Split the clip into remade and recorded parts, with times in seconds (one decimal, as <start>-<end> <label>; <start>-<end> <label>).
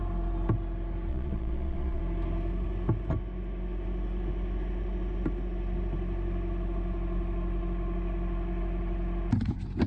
0.0-1.1 recorded; 1.1-2.0 remade; 2.0-9.9 recorded